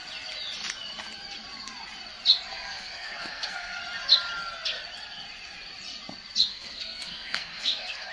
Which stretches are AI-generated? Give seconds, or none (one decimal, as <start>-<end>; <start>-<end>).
2.5-3.8; 6.5-8.1